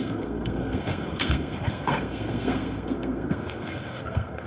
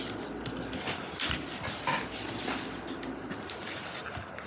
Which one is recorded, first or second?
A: second